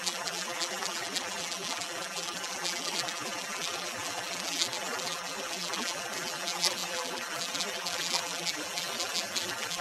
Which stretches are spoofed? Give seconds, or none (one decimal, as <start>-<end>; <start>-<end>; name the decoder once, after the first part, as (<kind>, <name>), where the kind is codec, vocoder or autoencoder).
0.0-9.8 (vocoder, BigVGAN v2)